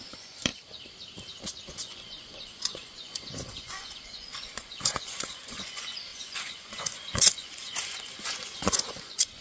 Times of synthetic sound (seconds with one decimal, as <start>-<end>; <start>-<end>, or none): 0.0-0.5; 1.7-9.4